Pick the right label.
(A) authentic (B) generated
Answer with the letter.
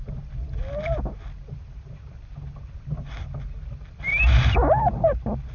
A